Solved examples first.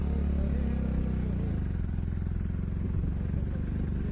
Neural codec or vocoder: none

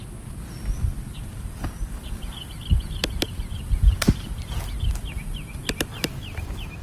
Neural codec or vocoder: vocoder, BigVGAN v2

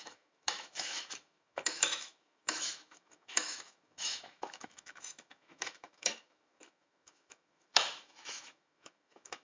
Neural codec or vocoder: autoencoder, DAC-VAE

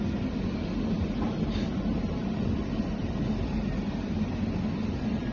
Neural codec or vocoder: none